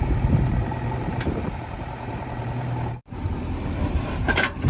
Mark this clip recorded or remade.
remade